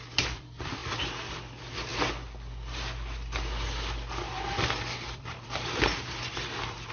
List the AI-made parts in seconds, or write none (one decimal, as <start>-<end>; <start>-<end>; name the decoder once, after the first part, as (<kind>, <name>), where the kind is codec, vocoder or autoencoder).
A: 0.0-0.8 (vocoder, BigVGAN v2); 1.3-1.9; 5.0-6.9